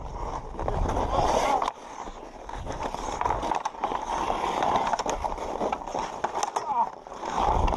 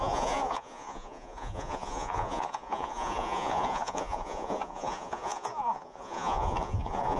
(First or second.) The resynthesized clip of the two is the second